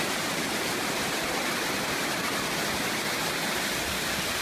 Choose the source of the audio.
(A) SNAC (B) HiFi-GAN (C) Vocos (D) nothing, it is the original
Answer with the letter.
D